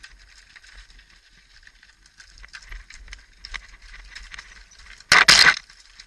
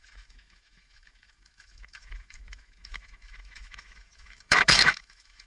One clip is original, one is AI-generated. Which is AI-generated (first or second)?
second